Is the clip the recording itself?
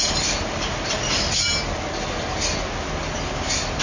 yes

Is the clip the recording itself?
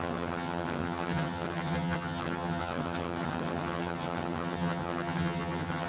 no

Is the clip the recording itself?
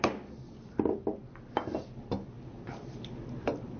yes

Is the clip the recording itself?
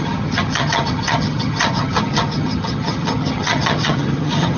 no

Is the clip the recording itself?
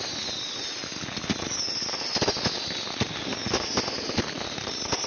yes